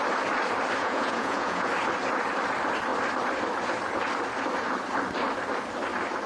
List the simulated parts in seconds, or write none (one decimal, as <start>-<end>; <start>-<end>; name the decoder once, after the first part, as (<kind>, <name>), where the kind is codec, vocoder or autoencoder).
0.8-1.7 (vocoder, Vocos)